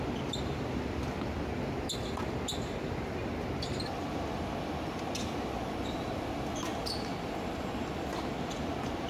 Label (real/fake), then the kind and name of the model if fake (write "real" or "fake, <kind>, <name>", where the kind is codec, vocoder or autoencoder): real